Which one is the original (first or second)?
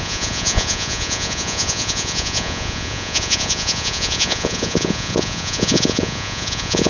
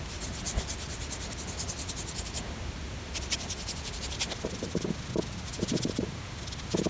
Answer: second